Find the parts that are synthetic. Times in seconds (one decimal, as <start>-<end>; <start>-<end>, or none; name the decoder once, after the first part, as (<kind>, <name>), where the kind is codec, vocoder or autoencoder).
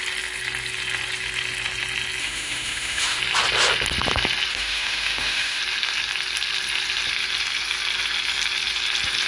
2.2-3.2 (autoencoder, DAC-VAE); 4.5-5.6